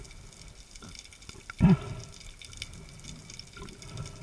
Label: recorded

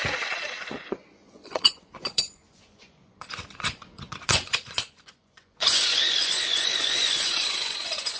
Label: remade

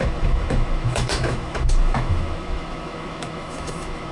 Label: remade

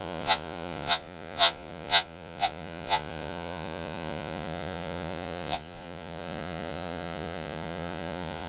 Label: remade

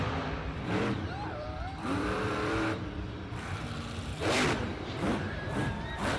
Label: remade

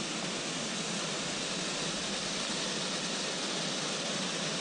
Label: recorded